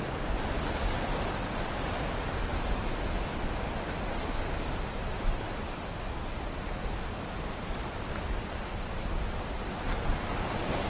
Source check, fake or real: real